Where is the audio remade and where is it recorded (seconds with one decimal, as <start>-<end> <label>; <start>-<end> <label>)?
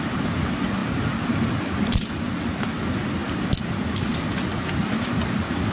0.0-0.8 recorded; 0.8-1.8 remade; 1.8-3.2 recorded; 3.2-5.7 remade